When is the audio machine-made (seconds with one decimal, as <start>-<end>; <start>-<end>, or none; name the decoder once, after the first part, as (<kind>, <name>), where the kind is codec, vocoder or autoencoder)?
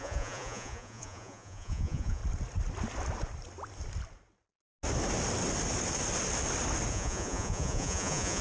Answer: 0.0-2.2 (vocoder, Vocos); 6.9-8.4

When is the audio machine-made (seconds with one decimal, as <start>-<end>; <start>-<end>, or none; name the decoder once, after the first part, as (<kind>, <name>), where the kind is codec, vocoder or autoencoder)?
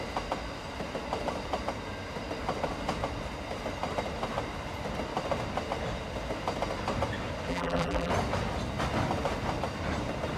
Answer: 7.5-8.1 (vocoder, BigVGAN v2)